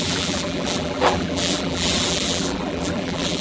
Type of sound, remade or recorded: remade